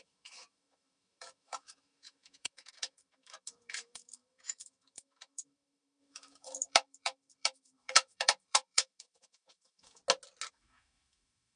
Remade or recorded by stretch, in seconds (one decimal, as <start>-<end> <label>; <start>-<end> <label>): 0.0-10.0 remade; 10.0-10.5 recorded; 10.5-11.6 remade